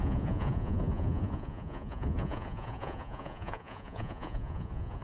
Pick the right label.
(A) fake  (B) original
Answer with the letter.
A